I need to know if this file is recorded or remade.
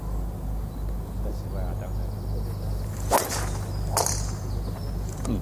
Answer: recorded